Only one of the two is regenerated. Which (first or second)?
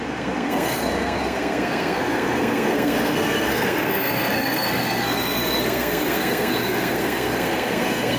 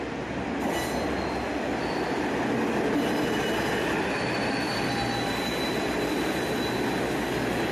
first